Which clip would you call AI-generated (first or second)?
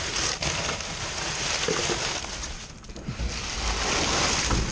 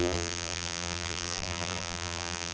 second